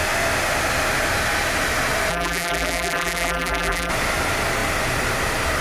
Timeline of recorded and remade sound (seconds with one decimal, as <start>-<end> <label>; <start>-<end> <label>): 0.0-2.1 recorded; 2.1-3.9 remade; 3.9-5.6 recorded